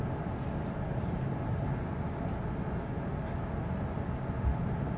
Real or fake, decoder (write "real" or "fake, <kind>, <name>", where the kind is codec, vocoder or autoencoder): real